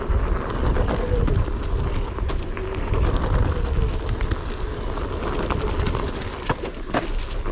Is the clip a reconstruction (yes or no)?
no